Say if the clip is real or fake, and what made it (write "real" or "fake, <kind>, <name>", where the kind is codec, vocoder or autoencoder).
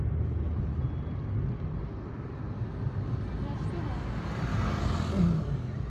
real